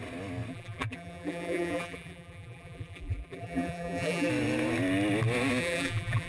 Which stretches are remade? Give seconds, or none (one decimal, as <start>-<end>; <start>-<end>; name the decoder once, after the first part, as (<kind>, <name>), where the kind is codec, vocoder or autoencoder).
0.5-4.3 (vocoder, BigVGAN v2); 5.6-6.3